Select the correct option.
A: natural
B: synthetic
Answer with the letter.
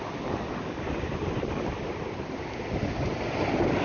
A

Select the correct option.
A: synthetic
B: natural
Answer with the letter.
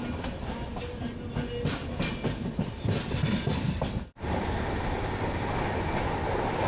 B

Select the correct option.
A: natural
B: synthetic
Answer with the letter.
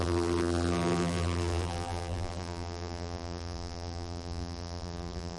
B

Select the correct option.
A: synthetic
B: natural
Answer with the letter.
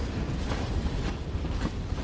B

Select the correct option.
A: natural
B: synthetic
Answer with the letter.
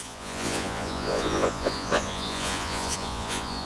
B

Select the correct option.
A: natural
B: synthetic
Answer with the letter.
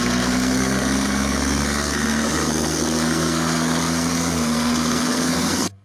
B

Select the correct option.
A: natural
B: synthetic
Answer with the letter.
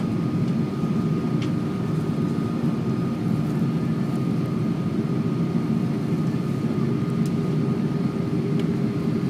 A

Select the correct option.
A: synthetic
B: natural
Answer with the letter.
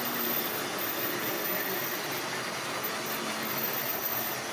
B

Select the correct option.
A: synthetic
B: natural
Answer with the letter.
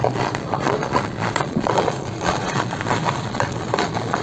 A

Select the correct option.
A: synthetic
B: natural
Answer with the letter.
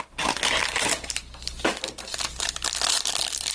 B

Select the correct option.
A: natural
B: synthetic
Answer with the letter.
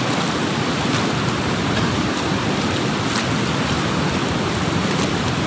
A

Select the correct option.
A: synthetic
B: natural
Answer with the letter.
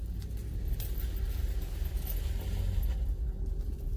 B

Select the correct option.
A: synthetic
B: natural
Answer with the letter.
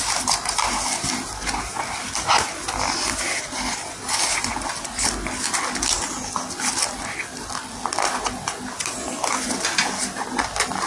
B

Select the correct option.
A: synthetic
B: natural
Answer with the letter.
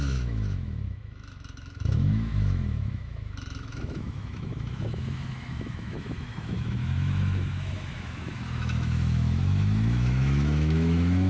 A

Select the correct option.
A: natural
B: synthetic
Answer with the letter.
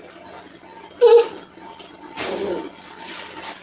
A